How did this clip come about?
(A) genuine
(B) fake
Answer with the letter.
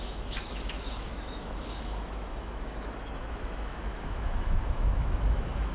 B